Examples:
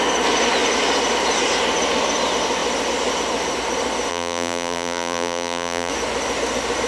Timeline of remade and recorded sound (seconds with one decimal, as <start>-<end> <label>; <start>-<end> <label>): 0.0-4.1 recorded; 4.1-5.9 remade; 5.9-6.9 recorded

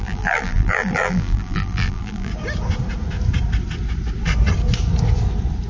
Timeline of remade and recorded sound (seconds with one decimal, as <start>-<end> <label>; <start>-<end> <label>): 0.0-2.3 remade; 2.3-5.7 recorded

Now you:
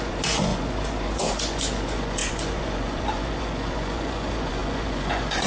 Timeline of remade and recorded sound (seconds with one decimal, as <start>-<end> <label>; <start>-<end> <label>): 0.0-5.5 remade